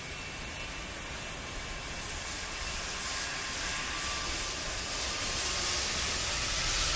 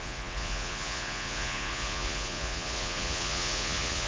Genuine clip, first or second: first